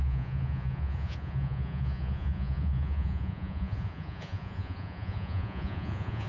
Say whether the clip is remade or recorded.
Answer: remade